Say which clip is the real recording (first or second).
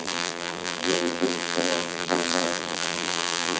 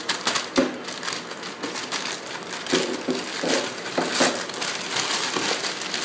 second